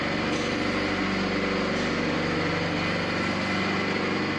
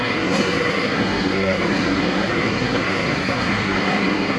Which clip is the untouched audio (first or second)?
first